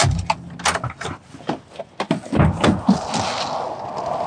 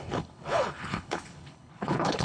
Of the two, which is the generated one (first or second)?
second